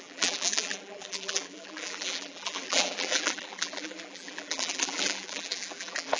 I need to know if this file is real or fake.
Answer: fake